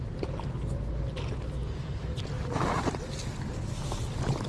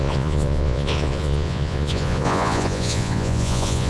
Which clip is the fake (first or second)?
second